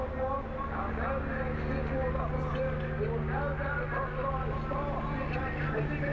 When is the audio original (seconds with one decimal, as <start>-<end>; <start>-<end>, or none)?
0.0-6.1